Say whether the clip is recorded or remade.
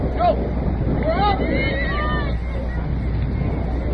recorded